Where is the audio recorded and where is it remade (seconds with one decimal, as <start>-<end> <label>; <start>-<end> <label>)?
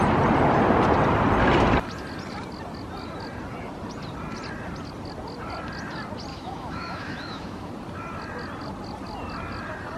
0.0-6.3 recorded; 6.3-7.7 remade; 7.7-10.0 recorded